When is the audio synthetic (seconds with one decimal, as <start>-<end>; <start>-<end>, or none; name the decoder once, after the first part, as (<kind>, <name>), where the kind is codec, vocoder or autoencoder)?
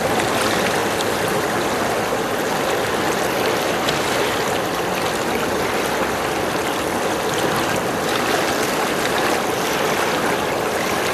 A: none